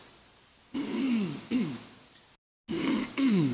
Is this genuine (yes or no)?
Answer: yes